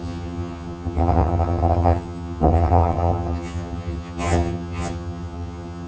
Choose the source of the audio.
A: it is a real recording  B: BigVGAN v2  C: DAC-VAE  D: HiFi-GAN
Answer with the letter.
D